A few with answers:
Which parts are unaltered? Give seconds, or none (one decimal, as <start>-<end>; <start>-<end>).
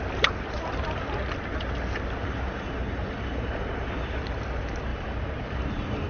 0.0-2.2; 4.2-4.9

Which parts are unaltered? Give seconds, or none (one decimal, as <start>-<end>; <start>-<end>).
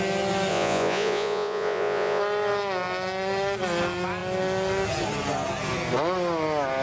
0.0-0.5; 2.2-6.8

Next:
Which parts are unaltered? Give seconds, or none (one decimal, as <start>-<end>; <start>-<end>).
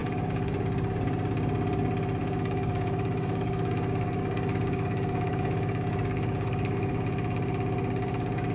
1.0-2.2; 6.9-8.5